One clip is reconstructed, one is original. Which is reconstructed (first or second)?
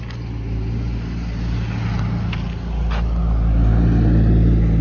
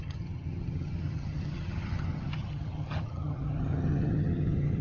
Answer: second